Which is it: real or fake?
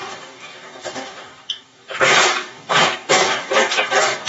fake